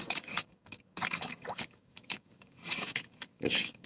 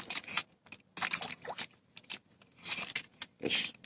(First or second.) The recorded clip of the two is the second